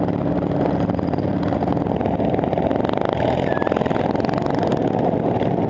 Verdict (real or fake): real